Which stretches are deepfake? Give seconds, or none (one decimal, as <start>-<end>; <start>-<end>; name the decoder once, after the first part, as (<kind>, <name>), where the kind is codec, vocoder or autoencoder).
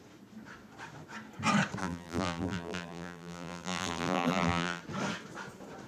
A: 1.8-4.8 (vocoder, BigVGAN v2)